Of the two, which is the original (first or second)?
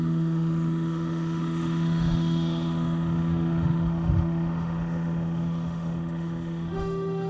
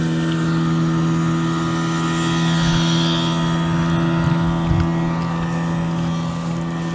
second